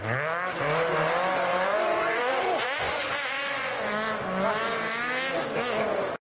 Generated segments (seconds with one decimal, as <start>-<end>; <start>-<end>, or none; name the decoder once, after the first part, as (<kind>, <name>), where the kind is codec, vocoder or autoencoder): 1.5-3.9 (vocoder, Vocos)

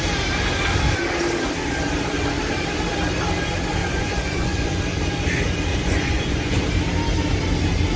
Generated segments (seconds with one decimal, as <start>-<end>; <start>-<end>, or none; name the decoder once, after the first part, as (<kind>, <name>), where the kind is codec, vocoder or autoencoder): 3.8-4.8 (vocoder, Vocos); 5.7-6.6

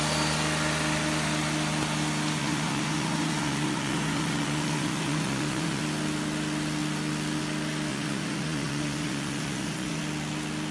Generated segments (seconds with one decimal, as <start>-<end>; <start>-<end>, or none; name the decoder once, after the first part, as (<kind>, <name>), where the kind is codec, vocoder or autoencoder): 2.4-5.8 (vocoder, Vocos); 7.9-10.0

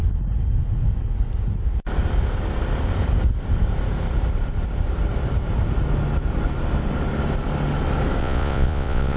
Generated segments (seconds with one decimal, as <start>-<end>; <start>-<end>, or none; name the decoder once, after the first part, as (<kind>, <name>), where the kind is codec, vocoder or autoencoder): 8.2-9.2 (vocoder, Vocos)

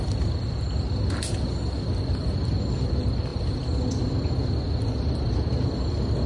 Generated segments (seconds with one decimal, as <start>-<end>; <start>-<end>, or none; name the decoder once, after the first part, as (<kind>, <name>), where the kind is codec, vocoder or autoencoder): none